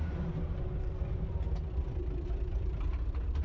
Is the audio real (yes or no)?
no